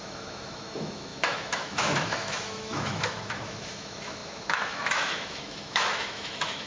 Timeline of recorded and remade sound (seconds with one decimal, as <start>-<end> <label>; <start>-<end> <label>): 0.0-6.7 remade